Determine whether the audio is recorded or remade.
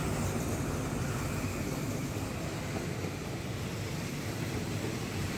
recorded